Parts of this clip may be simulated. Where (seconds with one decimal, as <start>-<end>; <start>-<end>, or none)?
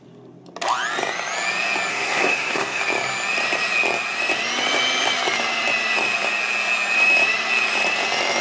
1.9-2.8